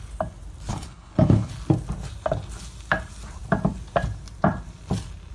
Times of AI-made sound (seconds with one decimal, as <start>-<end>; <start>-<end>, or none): 0.7-1.5